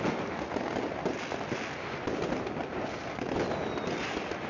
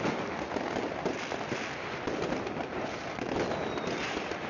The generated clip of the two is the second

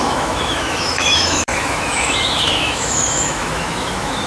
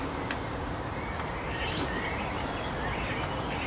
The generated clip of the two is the first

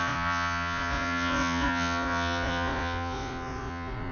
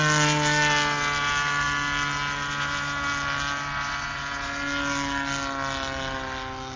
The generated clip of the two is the first